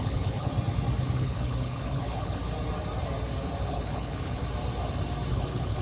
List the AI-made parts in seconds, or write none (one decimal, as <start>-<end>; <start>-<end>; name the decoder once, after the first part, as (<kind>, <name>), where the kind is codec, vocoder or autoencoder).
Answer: 0.0-0.5 (codec, HILCodec); 1.2-2.4; 3.6-4.4; 5.3-5.8